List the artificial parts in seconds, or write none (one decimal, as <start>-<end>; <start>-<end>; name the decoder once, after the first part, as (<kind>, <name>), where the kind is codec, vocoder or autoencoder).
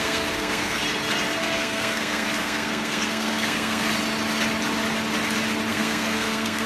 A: 0.0-0.8 (codec, SNAC); 1.4-3.9; 5.7-6.7